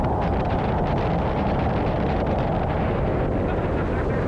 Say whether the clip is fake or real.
real